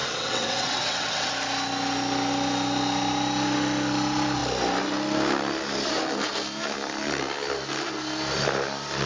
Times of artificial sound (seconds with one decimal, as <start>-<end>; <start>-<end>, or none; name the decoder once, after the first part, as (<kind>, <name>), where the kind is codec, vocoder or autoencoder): 0.0-1.3 (vocoder, WaveNeXt)